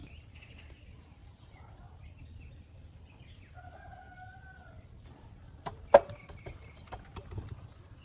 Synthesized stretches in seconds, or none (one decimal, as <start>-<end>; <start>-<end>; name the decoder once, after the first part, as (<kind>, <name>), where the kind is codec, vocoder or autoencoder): none